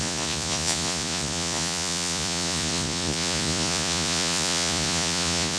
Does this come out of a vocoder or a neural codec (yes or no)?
yes